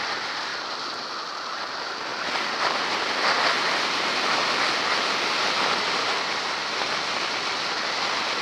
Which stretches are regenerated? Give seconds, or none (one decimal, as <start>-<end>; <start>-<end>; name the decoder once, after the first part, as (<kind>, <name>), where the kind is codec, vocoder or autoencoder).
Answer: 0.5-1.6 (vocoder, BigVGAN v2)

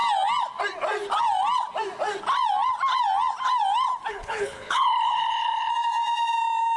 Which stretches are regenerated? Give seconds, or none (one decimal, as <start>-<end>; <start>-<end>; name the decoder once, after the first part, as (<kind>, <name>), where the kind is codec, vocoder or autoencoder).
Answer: 4.1-5.7 (codec, HILCodec)

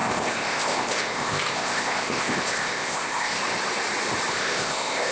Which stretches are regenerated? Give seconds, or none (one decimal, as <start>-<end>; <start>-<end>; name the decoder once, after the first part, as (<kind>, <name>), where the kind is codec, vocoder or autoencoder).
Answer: 0.0-3.4 (codec, ZipCodec); 4.3-5.1

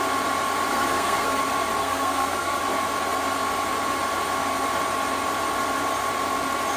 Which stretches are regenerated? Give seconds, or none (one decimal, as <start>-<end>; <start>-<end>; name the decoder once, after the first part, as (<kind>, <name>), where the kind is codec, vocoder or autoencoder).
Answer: 0.7-1.4 (codec, SNAC); 1.8-2.6

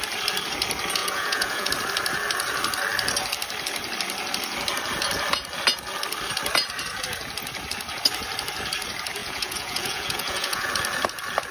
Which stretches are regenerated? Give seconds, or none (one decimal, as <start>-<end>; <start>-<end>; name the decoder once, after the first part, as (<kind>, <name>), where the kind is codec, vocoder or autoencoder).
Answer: 1.0-1.7 (vocoder, Vocos); 9.2-10.7

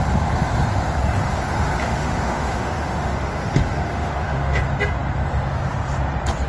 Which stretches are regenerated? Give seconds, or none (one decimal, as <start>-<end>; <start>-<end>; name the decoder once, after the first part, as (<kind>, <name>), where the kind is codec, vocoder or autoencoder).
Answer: 1.8-3.4 (autoencoder, DAC-VAE); 3.9-4.6

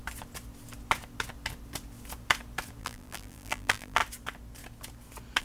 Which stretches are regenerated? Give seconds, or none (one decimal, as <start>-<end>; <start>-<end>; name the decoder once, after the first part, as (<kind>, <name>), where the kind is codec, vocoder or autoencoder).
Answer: 2.8-4.0 (vocoder, BigVGAN v2)

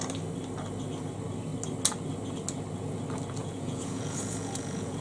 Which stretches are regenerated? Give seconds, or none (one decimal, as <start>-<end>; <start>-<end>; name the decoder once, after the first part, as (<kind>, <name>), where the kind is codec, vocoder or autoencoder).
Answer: 3.4-5.0 (vocoder, Vocos)